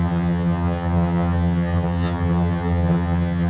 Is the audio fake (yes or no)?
yes